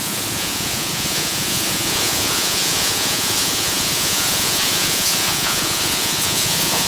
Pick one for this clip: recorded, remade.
remade